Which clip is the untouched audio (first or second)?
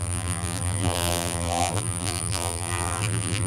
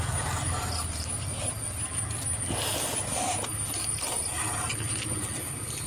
second